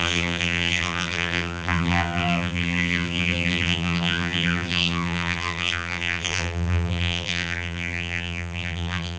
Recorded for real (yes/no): no